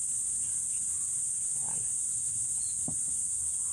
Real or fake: real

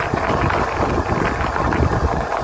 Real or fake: real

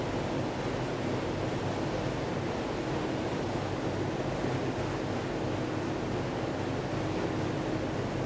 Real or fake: real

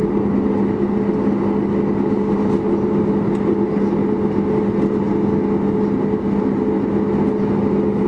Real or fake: real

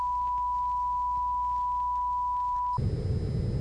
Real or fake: real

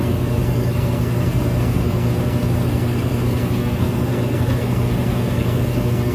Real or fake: fake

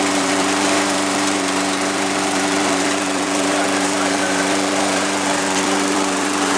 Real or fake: fake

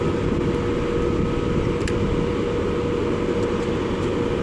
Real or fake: real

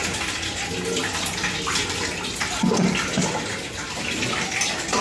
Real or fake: real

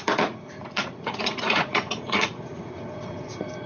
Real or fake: fake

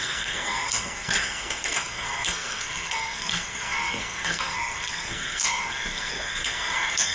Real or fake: fake